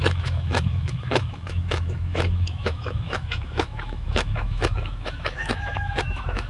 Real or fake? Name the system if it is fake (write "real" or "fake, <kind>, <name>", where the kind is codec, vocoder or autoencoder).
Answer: fake, autoencoder, DAC-VAE